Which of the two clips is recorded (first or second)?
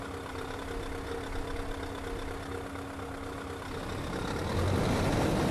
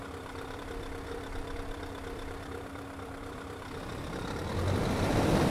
first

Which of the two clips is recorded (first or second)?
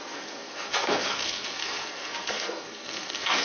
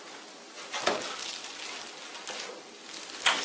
second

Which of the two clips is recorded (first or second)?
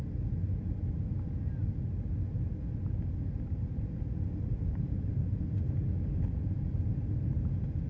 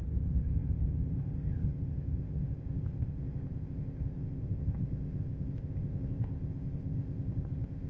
first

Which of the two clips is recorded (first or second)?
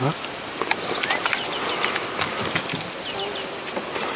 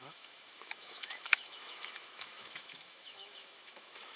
first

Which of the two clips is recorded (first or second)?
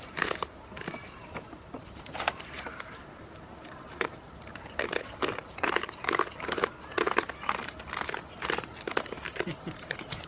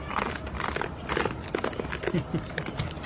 second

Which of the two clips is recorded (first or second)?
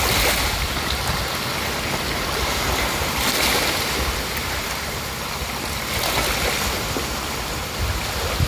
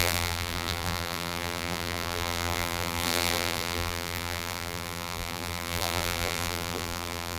first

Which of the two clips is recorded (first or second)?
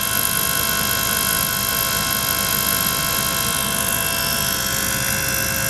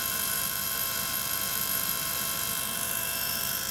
first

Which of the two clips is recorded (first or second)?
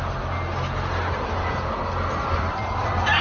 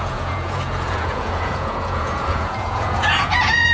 first